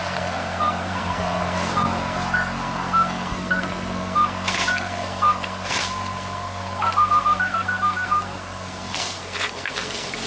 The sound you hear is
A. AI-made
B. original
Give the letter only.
A